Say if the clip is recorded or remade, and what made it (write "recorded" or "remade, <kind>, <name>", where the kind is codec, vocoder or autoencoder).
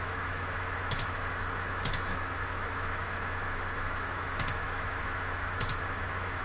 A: remade, autoencoder, DAC-VAE